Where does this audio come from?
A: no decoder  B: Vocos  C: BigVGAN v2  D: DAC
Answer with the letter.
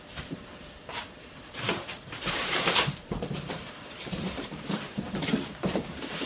C